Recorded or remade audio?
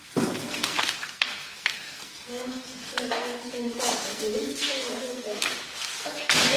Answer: remade